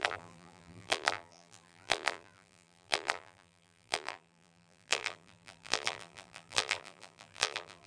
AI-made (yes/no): yes